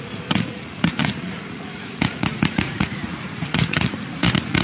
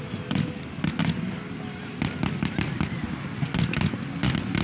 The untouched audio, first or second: second